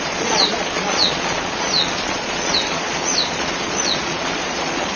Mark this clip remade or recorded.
remade